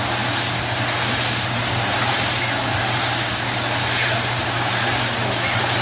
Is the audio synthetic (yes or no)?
no